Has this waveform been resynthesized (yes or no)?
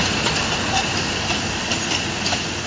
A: no